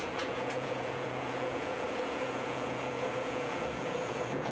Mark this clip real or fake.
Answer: fake